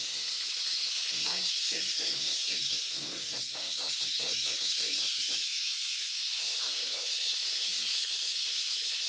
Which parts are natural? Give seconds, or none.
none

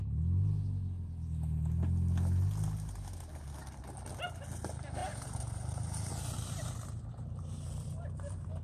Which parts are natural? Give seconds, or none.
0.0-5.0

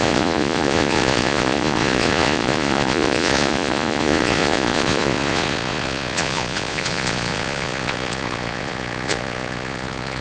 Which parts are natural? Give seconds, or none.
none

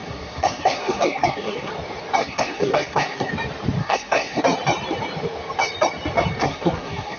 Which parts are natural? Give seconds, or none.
1.7-2.2; 3.3-3.8; 4.4-6.4

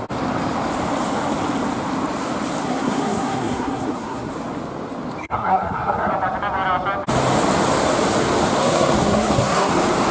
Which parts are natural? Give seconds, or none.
0.0-2.6; 4.3-5.2; 6.1-8.6; 9.7-10.1

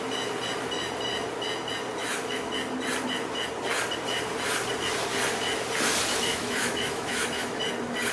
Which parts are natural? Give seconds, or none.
0.0-2.0; 2.5-6.1; 7.6-8.1

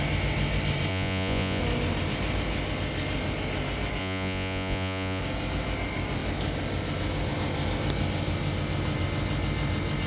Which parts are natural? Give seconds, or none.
0.0-0.9; 1.6-4.0; 5.2-10.1